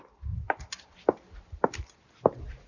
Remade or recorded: recorded